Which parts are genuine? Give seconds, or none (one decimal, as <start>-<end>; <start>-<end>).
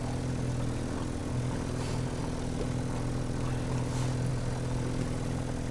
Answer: 0.0-5.7